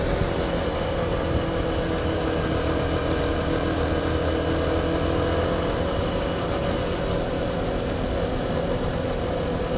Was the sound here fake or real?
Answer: real